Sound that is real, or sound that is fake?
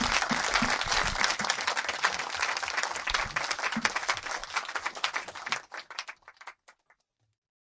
real